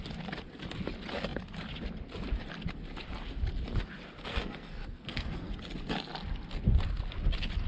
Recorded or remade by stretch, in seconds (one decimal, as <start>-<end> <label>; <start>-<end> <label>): 0.0-4.3 recorded; 4.3-5.6 remade; 5.6-7.7 recorded